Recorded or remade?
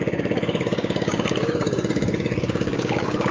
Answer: remade